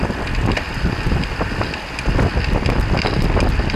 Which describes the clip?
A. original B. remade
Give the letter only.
A